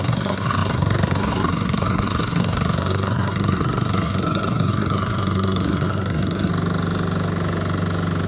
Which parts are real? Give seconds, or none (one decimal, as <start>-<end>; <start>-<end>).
6.5-8.3